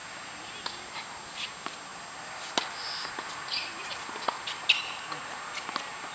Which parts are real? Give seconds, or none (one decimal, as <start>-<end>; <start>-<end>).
0.0-6.1